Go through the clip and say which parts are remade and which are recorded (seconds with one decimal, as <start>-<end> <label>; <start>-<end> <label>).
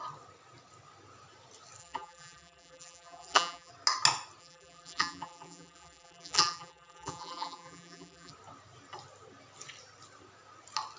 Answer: 0.0-1.8 recorded; 1.8-3.7 remade; 3.7-4.4 recorded; 4.4-8.3 remade; 8.3-11.0 recorded